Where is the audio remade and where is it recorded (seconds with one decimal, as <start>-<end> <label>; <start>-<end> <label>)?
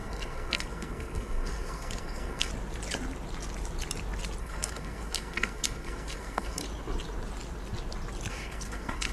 0.0-2.5 remade; 2.5-4.4 recorded; 4.4-6.6 remade; 6.6-8.3 recorded; 8.3-9.1 remade